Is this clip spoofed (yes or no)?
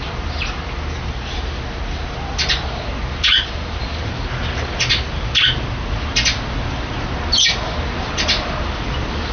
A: no